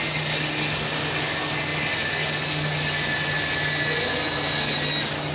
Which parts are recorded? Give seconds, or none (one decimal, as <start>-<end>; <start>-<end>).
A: 0.0-5.3